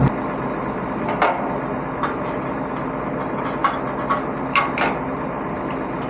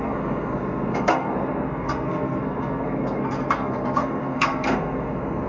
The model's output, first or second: second